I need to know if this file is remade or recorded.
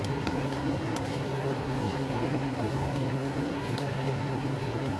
remade